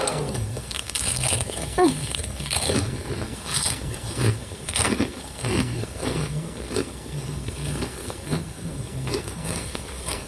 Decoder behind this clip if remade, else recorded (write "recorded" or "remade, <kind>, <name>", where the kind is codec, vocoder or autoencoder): remade, codec, SNAC